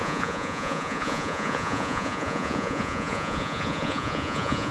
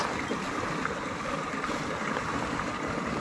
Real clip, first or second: second